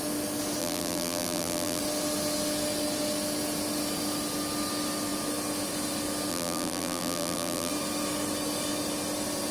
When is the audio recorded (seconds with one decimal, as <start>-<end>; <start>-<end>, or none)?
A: 0.0-0.6; 1.8-6.3; 7.7-9.5